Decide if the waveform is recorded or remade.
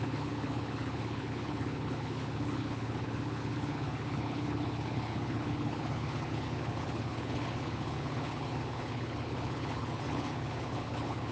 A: remade